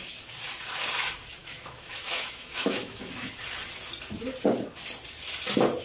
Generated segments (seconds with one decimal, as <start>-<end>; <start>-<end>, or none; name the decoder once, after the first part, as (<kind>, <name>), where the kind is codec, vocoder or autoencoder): 1.4-3.3 (autoencoder, DAC-VAE)